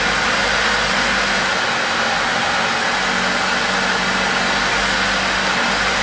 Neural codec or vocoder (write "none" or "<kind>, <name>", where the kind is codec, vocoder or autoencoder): none